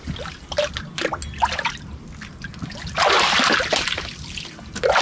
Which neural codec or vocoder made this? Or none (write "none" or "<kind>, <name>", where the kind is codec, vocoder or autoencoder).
none